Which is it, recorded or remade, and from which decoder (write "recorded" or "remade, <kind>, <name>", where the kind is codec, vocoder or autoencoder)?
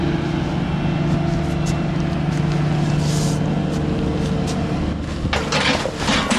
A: recorded